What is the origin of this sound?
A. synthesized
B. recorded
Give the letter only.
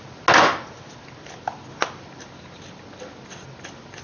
B